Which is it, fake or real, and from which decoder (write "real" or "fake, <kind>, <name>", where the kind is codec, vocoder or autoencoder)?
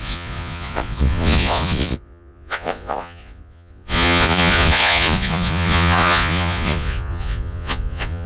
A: fake, vocoder, Vocos